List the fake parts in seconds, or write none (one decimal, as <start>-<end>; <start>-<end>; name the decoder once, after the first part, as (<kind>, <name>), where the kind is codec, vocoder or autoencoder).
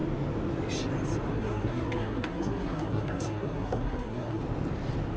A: 1.3-4.4 (codec, SNAC)